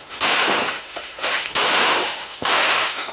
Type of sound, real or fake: fake